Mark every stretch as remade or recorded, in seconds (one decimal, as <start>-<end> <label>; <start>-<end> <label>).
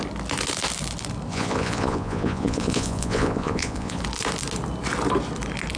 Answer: 0.0-1.3 recorded; 1.3-4.0 remade; 4.0-5.8 recorded